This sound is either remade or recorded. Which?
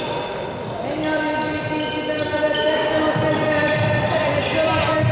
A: recorded